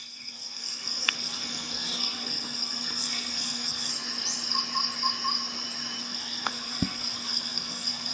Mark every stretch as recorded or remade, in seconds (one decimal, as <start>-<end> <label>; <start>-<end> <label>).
0.0-3.9 remade; 3.9-6.0 recorded; 6.0-8.1 remade